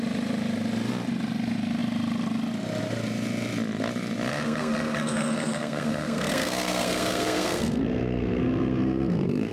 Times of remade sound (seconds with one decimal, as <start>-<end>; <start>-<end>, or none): 4.3-9.5